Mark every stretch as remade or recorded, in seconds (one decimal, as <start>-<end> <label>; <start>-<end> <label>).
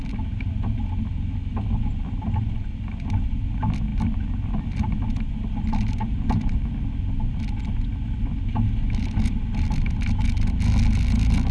0.0-11.5 recorded